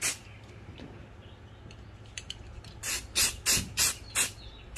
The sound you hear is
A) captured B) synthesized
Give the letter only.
A